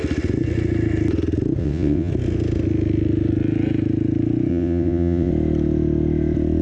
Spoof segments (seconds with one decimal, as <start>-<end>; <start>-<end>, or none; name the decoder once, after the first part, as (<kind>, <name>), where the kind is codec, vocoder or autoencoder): 1.6-2.1 (vocoder, WaveNeXt); 4.5-5.3